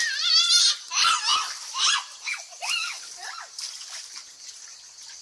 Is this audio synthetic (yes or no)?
no